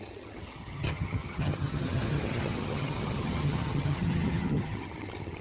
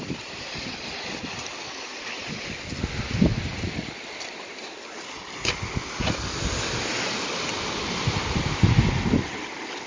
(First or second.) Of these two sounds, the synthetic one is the first